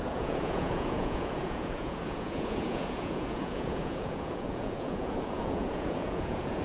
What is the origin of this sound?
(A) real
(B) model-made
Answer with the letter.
B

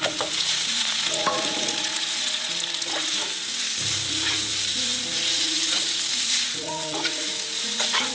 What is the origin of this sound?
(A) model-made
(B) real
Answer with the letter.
A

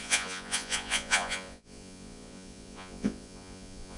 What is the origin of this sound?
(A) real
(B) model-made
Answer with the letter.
B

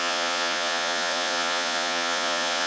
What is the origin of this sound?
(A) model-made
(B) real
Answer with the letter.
A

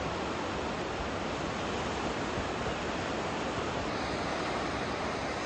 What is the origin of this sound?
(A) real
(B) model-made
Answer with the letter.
A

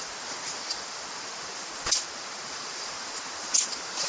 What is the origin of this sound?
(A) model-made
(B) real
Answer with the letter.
B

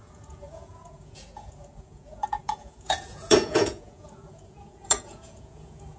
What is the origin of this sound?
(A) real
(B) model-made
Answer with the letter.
B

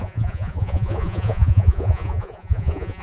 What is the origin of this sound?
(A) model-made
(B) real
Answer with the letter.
A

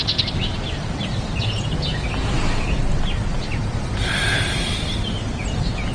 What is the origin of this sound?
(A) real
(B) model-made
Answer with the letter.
A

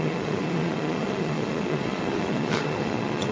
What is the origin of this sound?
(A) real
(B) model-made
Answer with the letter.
B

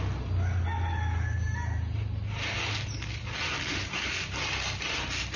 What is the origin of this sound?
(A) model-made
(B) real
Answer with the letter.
B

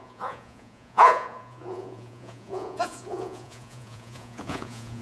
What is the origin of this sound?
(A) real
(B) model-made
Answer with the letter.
B